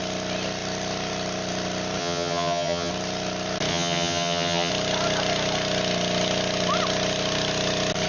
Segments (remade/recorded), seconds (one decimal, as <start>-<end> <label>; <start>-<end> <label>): 0.0-2.0 recorded; 2.0-2.9 remade; 2.9-3.7 recorded; 3.7-4.7 remade; 4.7-8.1 recorded